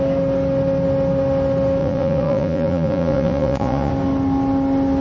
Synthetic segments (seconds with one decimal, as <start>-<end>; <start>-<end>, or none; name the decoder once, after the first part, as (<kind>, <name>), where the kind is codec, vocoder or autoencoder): 1.8-3.9 (vocoder, Vocos)